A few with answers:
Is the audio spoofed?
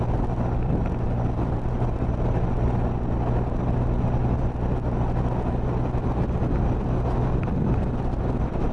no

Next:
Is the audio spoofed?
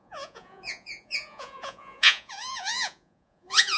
yes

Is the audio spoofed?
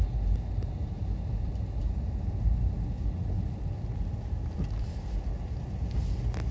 no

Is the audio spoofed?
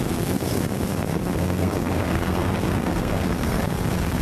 yes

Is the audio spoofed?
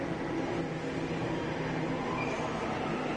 no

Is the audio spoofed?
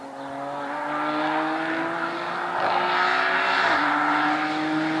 no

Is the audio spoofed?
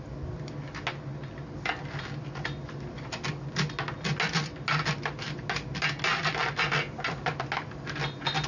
no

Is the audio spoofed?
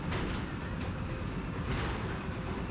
no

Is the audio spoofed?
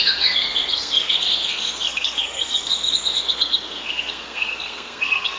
yes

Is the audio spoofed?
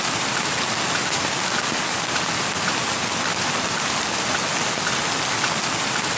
no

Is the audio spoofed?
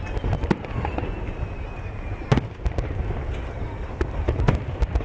no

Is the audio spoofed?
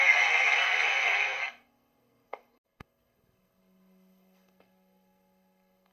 yes